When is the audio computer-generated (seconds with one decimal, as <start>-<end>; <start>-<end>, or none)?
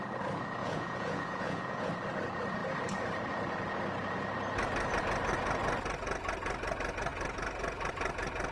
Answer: 0.6-1.9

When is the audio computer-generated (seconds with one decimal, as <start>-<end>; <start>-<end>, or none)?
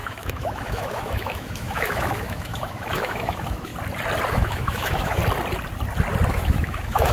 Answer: 0.0-3.7; 4.3-5.2; 6.3-7.1